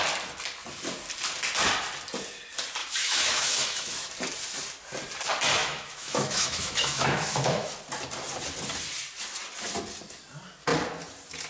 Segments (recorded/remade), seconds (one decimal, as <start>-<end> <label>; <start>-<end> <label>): 0.0-2.8 recorded; 2.8-4.1 remade; 4.1-5.6 recorded; 5.6-7.7 remade; 7.7-11.5 recorded